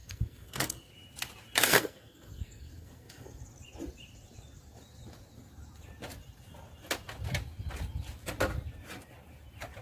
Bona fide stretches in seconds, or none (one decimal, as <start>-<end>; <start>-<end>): 0.9-1.6; 3.4-9.8